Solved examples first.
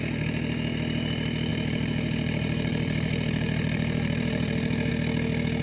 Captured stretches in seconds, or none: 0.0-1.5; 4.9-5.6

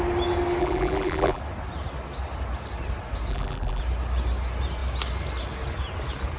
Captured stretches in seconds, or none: 0.0-0.6; 1.4-3.3; 3.8-6.4

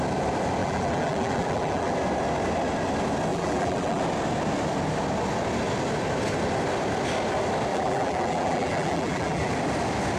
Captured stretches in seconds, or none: 0.0-0.6; 1.9-3.3; 4.0-7.7; 9.5-10.2

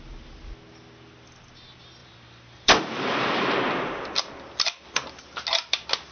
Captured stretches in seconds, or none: 0.0-2.0; 4.1-6.1

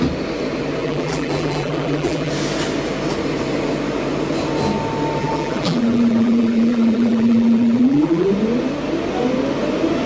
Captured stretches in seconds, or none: 0.0-0.8; 2.3-5.2; 8.3-10.1

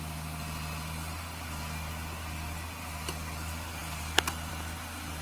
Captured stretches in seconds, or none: 0.0-5.2